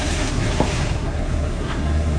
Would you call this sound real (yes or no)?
no